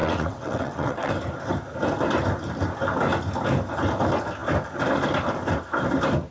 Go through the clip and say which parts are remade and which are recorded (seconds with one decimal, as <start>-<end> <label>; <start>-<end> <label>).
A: 0.0-1.1 remade; 1.1-6.3 recorded